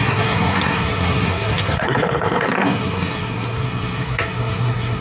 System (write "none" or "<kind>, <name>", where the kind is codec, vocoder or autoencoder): codec, SNAC